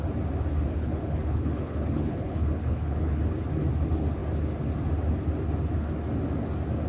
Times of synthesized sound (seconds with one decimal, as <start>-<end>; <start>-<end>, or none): 0.8-3.2